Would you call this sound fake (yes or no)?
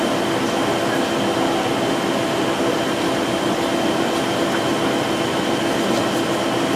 no